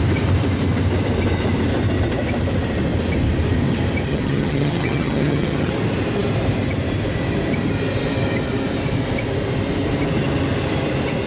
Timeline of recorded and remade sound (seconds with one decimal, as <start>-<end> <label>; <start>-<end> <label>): 0.0-4.1 recorded; 4.1-5.7 remade; 5.7-11.3 recorded